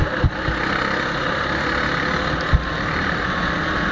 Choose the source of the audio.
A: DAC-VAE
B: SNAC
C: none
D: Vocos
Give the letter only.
C